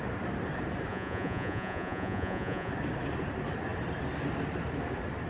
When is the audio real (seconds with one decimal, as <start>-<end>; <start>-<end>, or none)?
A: 0.0-0.9; 2.7-5.3